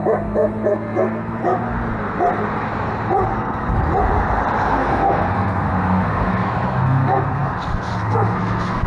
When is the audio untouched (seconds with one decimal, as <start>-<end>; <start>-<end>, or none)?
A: 1.4-3.3; 3.9-4.7